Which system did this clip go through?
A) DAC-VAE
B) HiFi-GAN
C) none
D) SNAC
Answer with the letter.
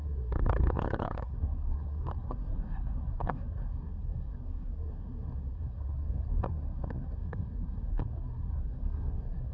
D